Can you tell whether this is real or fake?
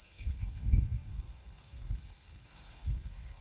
fake